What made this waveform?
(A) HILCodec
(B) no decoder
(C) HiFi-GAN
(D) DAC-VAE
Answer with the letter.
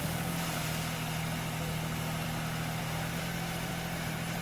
B